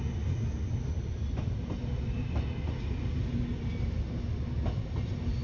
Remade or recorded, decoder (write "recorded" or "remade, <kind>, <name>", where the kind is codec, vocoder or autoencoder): recorded